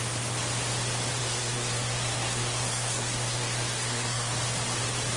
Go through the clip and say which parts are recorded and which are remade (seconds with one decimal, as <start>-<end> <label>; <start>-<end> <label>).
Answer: 0.0-1.2 recorded; 1.2-4.3 remade; 4.3-5.2 recorded